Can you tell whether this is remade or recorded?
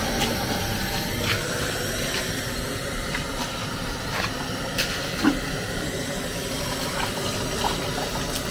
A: recorded